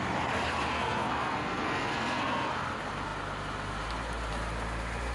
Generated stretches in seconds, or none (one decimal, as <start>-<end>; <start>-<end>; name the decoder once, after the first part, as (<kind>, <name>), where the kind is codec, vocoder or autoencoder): 0.7-2.5 (codec, SNAC)